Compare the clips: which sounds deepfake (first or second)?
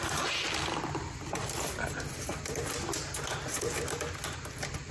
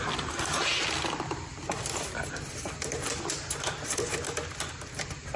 second